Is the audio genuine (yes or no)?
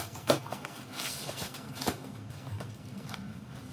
no